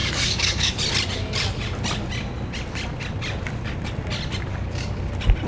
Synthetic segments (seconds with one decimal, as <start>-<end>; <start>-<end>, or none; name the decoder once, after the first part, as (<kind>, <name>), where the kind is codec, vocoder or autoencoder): 0.0-0.8 (codec, DAC); 4.5-5.0